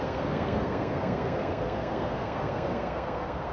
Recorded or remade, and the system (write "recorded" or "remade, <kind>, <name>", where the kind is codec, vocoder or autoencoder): remade, codec, SNAC